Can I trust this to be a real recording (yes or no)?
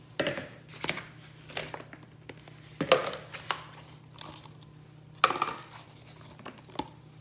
yes